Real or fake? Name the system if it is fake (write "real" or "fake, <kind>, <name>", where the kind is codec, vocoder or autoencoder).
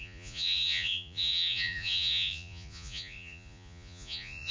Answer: fake, vocoder, Vocos